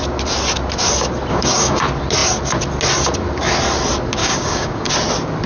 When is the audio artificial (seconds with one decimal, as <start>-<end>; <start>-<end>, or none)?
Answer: 1.3-1.8; 4.2-4.9